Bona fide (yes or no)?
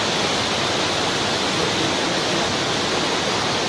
yes